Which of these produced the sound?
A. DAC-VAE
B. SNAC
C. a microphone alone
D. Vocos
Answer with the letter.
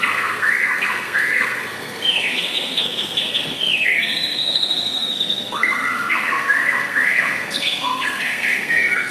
B